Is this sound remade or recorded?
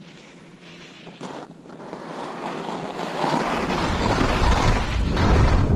recorded